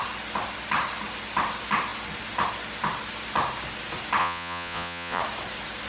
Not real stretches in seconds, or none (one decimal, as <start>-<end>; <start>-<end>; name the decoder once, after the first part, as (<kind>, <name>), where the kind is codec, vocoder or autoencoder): 4.2-5.2 (vocoder, Vocos)